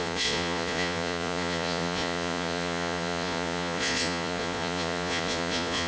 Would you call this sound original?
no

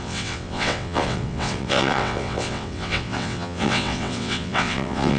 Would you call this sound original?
no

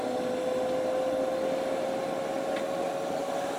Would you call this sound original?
yes